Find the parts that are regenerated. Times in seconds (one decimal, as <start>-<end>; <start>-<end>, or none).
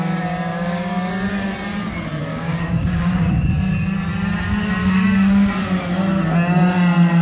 0.5-1.1; 2.3-3.5; 4.8-5.5